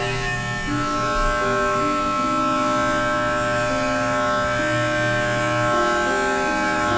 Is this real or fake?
fake